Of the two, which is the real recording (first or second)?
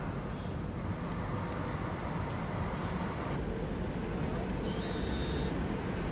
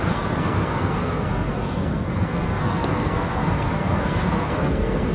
first